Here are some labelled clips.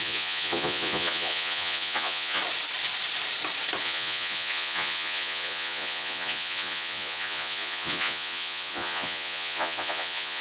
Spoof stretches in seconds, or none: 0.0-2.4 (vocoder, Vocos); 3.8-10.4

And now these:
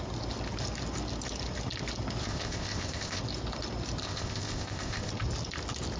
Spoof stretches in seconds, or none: 2.2-3.2 (codec, ZipCodec); 4.0-5.1

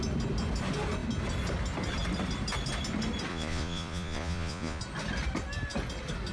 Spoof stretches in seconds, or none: 3.3-4.8 (vocoder, Vocos)

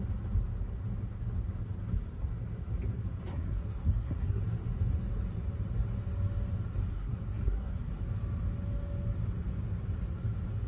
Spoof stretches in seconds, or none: 3.3-4.4 (codec, SNAC); 6.9-7.9